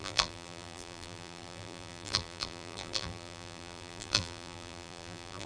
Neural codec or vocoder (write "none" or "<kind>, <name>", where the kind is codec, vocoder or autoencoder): vocoder, BigVGAN v2